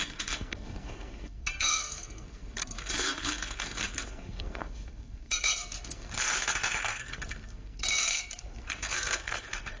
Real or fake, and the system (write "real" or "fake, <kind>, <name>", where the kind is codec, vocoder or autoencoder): fake, codec, SNAC